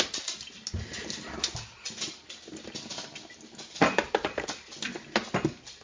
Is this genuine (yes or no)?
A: yes